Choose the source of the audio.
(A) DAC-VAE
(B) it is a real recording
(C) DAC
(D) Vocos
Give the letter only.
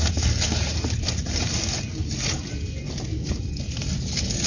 B